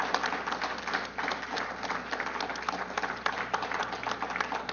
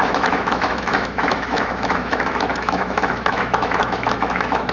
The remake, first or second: second